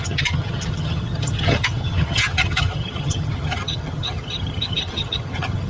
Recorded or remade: remade